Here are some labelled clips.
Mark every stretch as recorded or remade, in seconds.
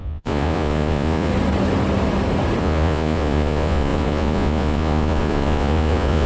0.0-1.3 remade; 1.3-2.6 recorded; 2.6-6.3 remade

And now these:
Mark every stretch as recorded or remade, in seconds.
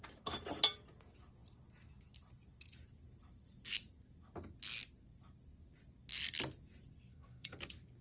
0.0-7.1 recorded; 7.1-7.6 remade; 7.6-8.0 recorded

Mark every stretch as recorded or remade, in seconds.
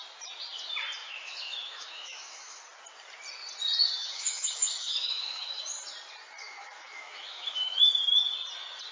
0.0-1.0 recorded; 1.0-2.6 remade; 2.6-4.0 recorded; 4.0-5.6 remade; 5.6-6.4 recorded; 6.4-7.8 remade; 7.8-8.9 recorded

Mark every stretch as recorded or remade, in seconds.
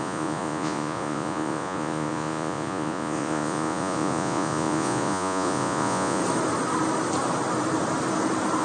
0.0-6.2 remade; 6.2-8.6 recorded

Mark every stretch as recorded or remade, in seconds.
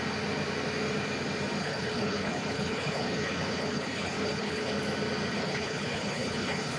0.0-1.6 recorded; 1.6-4.7 remade; 4.7-5.3 recorded; 5.3-6.8 remade